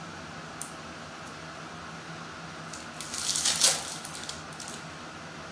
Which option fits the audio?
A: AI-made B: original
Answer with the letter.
B